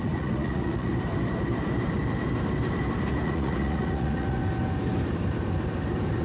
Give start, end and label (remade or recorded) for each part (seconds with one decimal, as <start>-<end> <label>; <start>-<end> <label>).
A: 0.0-0.9 remade; 0.9-3.1 recorded; 3.1-4.4 remade; 4.4-6.2 recorded